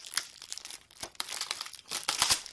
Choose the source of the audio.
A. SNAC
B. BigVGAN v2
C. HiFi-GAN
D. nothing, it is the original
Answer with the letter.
B